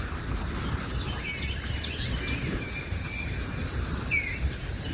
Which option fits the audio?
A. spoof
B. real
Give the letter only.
B